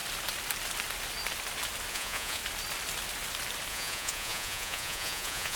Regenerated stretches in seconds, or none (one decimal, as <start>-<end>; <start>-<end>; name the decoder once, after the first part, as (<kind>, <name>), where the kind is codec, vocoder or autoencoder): 1.9-2.4 (vocoder, Vocos); 3.7-5.6